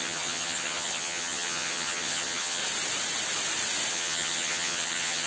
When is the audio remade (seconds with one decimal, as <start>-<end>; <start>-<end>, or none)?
0.0-2.6; 3.9-5.3